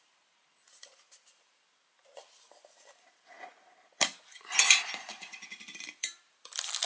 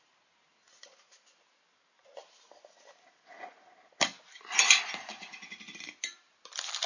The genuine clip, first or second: second